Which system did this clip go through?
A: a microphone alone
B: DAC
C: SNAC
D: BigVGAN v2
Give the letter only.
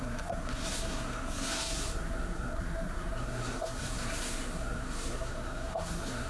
C